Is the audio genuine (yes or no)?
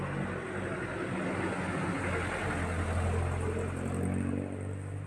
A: yes